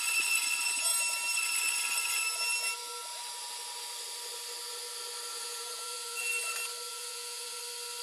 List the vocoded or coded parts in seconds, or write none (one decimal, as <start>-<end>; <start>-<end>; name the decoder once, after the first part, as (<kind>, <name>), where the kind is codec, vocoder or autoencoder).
5.3-6.3 (vocoder, Vocos); 6.9-7.6